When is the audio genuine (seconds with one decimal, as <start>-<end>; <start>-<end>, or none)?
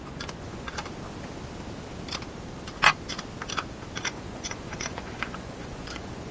0.7-4.0